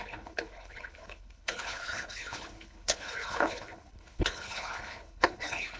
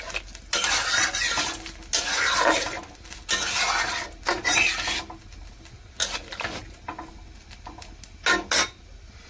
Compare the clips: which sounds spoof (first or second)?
first